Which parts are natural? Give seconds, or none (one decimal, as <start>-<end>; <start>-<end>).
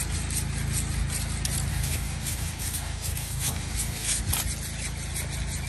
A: 0.0-1.7; 4.2-5.7